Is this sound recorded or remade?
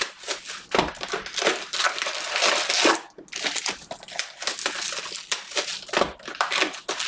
recorded